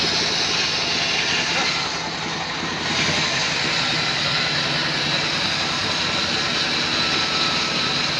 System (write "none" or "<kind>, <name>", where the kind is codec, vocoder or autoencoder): none